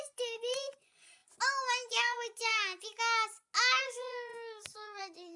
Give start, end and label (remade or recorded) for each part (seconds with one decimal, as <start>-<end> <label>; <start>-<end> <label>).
0.0-1.2 remade; 1.2-1.9 recorded; 1.9-2.5 remade; 2.5-3.8 recorded; 3.8-5.4 remade